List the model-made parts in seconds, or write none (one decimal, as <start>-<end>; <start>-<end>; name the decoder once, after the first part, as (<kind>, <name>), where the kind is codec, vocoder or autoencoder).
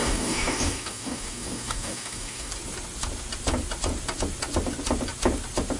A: 0.0-2.5 (codec, DAC)